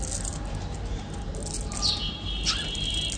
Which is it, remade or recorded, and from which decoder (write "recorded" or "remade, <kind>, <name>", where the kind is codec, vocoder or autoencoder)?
recorded